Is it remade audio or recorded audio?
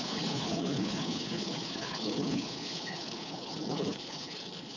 remade